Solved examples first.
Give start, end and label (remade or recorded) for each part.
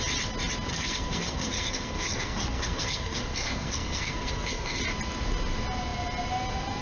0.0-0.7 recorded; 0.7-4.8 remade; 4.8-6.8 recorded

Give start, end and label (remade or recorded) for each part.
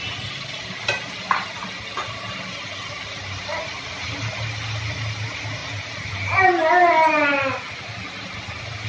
0.0-8.9 recorded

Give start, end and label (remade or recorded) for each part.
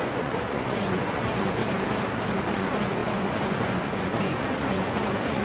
0.0-1.6 remade; 1.6-2.5 recorded; 2.5-5.4 remade